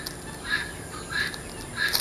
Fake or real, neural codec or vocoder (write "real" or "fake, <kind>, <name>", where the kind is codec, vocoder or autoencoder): real